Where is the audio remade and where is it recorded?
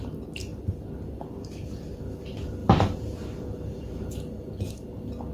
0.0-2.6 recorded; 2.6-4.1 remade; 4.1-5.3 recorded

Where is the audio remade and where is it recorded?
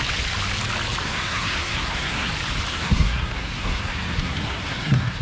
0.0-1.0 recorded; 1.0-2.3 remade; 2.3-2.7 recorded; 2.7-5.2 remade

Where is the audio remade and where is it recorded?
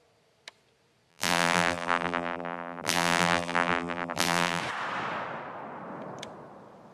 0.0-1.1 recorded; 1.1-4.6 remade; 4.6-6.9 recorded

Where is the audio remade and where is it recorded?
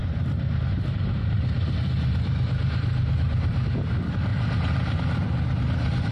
0.0-3.7 remade; 3.7-4.3 recorded; 4.3-6.1 remade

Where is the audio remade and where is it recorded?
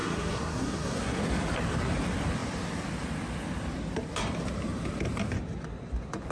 0.0-1.2 remade; 1.2-6.3 recorded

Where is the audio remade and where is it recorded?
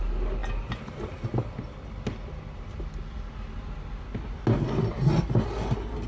0.0-6.1 recorded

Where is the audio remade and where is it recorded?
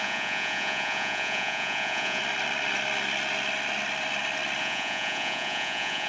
0.0-2.2 remade; 2.2-4.6 recorded; 4.6-6.1 remade